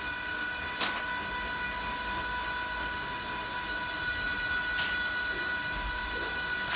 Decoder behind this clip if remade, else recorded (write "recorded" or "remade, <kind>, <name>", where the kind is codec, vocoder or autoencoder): recorded